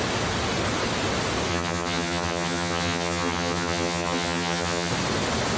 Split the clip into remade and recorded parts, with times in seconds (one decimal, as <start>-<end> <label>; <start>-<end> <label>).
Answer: 0.0-1.5 recorded; 1.5-4.9 remade; 4.9-5.6 recorded